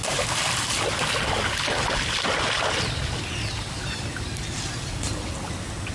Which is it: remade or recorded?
recorded